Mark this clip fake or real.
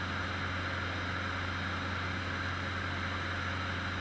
real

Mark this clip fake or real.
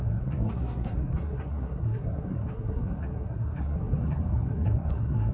fake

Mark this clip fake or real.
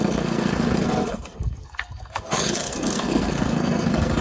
fake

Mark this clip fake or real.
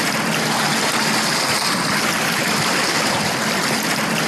real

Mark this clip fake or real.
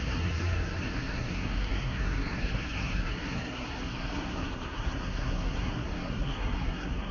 fake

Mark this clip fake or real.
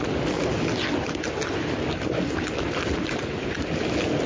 real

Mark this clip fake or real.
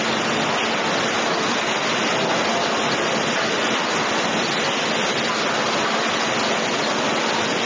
real